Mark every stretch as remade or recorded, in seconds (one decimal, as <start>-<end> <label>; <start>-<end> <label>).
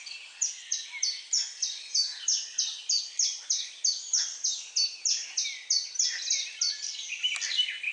0.0-7.9 recorded